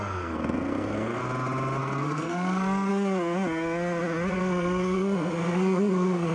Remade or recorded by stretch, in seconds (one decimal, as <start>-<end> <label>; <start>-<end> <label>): 0.0-1.2 remade; 1.2-1.8 recorded; 1.8-2.9 remade; 2.9-4.3 recorded; 4.3-6.3 remade

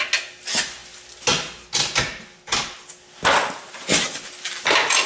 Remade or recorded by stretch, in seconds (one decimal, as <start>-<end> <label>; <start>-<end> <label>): 0.0-5.1 recorded

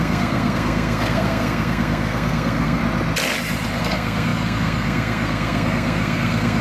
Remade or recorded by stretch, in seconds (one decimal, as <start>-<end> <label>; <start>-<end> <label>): 0.0-2.8 remade; 2.8-3.8 recorded; 3.8-6.6 remade

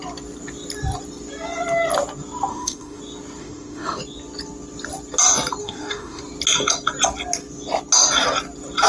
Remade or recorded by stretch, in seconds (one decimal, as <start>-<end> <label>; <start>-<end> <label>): 0.0-2.5 recorded; 2.5-3.0 remade; 3.0-3.4 recorded; 3.4-4.0 remade; 4.0-5.6 recorded; 5.6-6.2 remade; 6.2-8.9 recorded

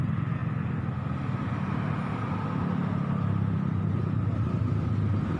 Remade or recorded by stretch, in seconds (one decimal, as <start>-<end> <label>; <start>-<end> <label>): 0.0-5.4 recorded